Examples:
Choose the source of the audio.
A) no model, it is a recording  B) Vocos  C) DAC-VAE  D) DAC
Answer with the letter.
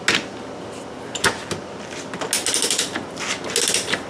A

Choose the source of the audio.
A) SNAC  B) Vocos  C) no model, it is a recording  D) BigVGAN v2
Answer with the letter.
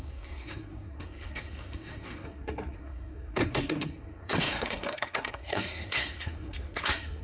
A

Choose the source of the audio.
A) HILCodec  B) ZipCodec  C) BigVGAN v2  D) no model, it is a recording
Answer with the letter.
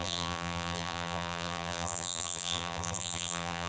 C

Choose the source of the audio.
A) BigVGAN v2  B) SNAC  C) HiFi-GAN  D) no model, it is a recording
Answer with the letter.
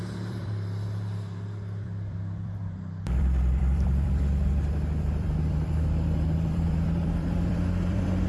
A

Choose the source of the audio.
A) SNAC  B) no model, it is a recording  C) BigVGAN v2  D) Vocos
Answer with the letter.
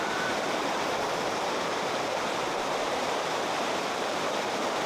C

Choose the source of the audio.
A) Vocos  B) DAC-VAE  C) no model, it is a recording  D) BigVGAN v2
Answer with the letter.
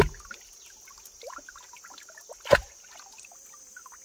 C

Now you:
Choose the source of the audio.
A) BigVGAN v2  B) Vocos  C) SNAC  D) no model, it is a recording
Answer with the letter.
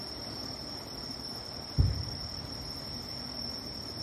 D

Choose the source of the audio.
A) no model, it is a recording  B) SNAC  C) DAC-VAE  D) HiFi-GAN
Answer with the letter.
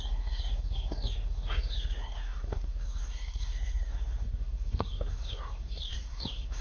B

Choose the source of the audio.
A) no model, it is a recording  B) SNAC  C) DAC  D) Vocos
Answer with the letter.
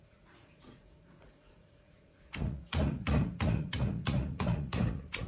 D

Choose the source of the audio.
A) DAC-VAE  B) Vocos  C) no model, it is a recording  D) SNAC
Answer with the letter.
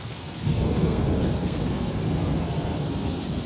D